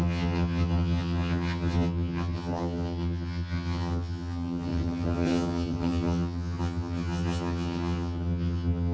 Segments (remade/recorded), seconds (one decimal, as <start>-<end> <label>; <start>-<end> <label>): 0.0-8.9 remade